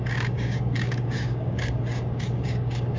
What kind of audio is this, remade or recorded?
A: remade